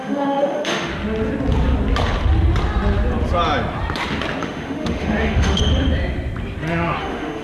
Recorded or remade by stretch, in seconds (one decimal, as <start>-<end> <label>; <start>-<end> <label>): 0.0-0.9 remade; 0.9-4.4 recorded; 4.4-5.6 remade; 5.6-7.0 recorded; 7.0-7.4 remade

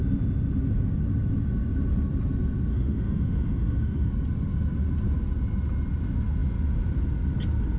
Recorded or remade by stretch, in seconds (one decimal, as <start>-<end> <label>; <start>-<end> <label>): 0.0-2.7 recorded; 2.7-4.1 remade; 4.1-7.8 recorded

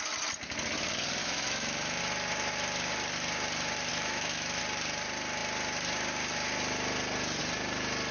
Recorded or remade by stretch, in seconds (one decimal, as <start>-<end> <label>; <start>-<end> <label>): 0.0-1.2 recorded; 1.2-2.0 remade; 2.0-3.9 recorded; 3.9-4.6 remade; 4.6-8.1 recorded

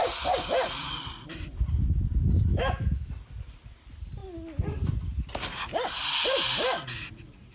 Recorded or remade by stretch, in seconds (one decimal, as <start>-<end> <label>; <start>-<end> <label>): 0.0-2.5 recorded; 2.5-3.1 remade; 3.1-7.5 recorded

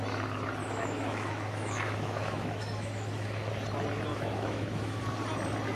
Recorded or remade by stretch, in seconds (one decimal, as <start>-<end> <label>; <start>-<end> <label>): 0.0-0.6 recorded; 0.6-3.5 remade; 3.5-4.1 recorded; 4.1-5.0 remade; 5.0-5.8 recorded